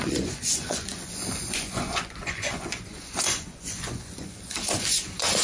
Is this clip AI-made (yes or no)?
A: yes